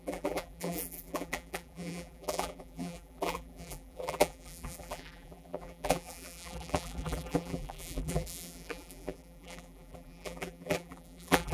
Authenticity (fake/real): fake